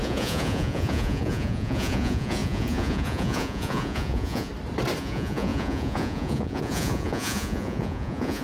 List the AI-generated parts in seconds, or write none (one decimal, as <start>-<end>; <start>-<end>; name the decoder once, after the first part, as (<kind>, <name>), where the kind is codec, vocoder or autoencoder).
0.0-4.5 (vocoder, Vocos); 5.0-8.4

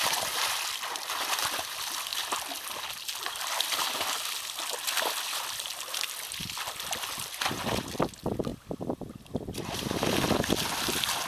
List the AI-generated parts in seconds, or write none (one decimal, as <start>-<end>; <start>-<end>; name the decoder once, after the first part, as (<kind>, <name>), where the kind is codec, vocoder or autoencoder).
none